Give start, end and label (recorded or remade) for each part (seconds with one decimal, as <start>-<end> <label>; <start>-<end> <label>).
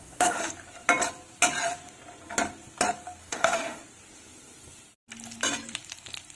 0.0-0.5 remade; 0.5-3.2 recorded; 3.2-3.8 remade; 3.8-6.4 recorded